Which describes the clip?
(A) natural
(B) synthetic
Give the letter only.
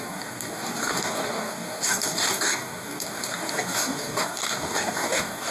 B